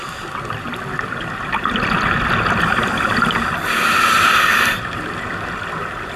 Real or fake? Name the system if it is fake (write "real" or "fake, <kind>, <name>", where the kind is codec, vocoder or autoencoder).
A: real